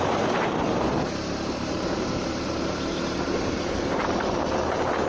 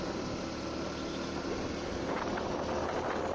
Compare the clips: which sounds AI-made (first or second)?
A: first